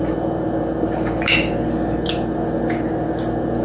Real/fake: real